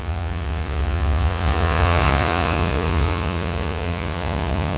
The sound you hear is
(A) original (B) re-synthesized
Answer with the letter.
B